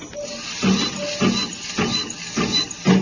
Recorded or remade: recorded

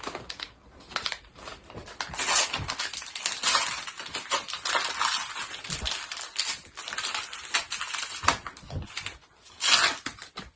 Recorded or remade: recorded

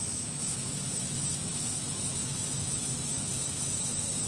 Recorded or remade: remade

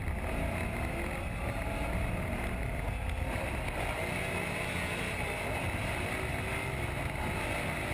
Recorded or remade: recorded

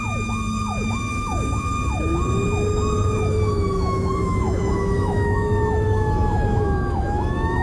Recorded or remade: remade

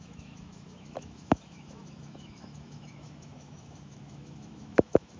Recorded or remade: remade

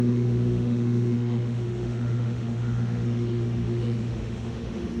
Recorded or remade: remade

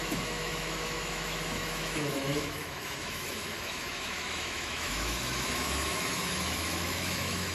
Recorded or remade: remade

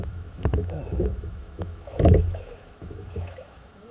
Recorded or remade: remade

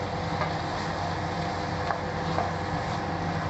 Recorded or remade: recorded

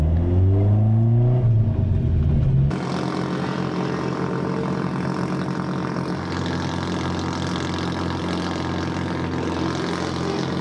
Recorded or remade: recorded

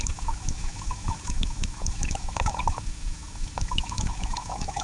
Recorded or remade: remade